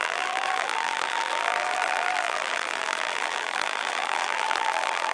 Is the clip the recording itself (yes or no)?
no